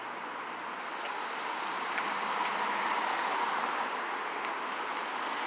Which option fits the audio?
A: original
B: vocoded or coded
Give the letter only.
A